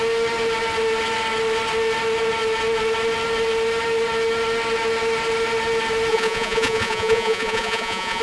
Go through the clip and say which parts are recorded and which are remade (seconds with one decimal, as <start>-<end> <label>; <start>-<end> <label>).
0.0-6.1 recorded; 6.1-8.2 remade